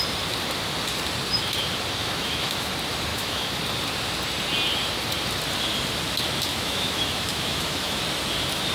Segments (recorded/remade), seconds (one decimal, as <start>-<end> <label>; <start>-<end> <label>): 0.0-2.0 recorded; 2.0-2.7 remade; 2.7-3.1 recorded; 3.1-3.6 remade; 3.6-6.5 recorded; 6.5-8.0 remade; 8.0-8.7 recorded